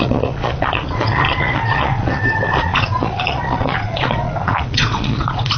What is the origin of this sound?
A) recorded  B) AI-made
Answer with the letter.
B